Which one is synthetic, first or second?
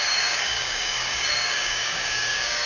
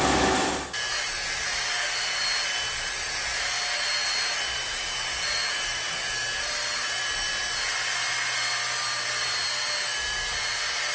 first